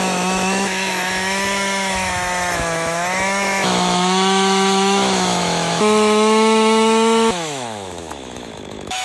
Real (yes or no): no